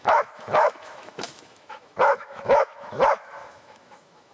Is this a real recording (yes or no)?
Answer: no